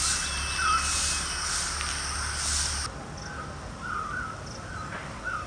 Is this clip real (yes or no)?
yes